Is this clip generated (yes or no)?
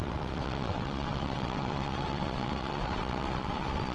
yes